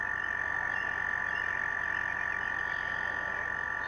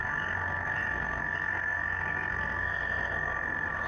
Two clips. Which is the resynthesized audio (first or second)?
second